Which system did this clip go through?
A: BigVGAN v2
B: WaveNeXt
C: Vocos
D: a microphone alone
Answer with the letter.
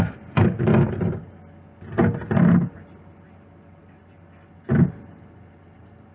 D